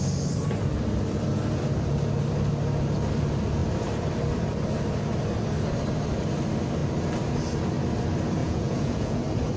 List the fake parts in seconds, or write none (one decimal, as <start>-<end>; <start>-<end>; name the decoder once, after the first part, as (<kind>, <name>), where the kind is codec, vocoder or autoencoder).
8.4-9.2 (vocoder, Vocos)